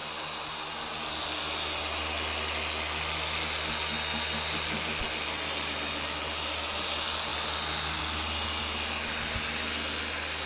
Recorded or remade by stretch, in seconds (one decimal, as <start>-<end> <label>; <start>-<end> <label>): 0.0-10.5 recorded